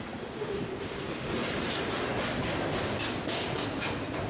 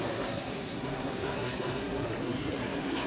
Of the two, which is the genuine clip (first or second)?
first